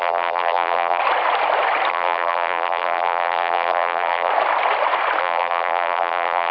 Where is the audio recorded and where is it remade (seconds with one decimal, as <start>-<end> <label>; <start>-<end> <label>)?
0.0-1.0 remade; 1.0-1.9 recorded; 1.9-4.3 remade; 4.3-5.2 recorded; 5.2-6.5 remade